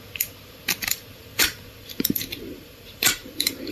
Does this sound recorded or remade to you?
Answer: remade